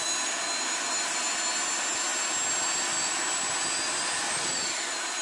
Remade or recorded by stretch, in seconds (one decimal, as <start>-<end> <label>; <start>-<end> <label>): 0.0-5.2 recorded